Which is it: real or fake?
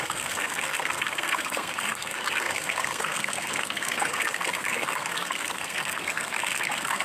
fake